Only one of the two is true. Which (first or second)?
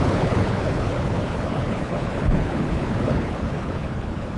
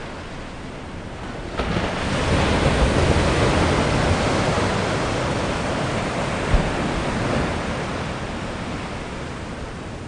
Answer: second